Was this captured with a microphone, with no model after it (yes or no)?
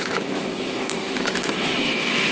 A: no